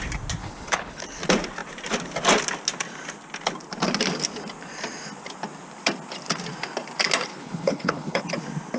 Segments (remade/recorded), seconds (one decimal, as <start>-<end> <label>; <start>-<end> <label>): 0.0-0.4 recorded; 0.4-1.0 remade; 1.0-7.3 recorded; 7.3-8.2 remade; 8.2-8.8 recorded